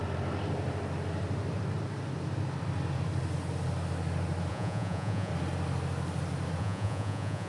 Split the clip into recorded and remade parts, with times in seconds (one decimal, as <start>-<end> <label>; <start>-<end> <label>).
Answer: 0.0-4.5 recorded; 4.5-5.3 remade; 5.3-6.6 recorded; 6.6-7.5 remade